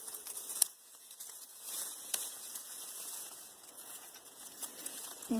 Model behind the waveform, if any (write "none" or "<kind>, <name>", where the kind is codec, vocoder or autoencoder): vocoder, Vocos